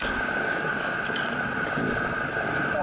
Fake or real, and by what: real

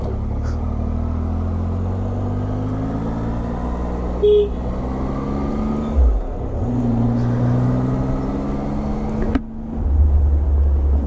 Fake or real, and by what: real